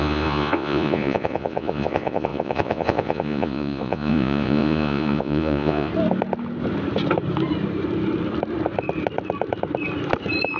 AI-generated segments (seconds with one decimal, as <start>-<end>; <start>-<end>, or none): 0.0-5.9